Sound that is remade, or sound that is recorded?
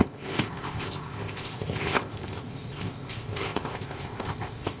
remade